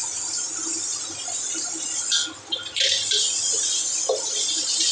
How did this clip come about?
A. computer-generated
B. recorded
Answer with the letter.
B